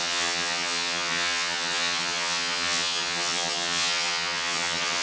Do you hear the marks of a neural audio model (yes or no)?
yes